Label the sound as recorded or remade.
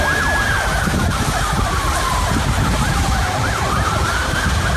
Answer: recorded